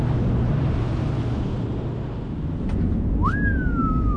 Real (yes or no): yes